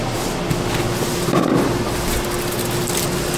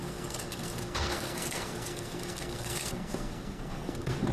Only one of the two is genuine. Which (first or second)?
first